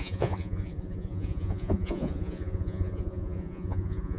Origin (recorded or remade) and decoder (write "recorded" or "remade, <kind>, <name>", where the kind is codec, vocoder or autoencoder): remade, vocoder, Vocos